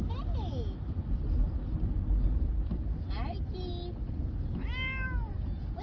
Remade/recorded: recorded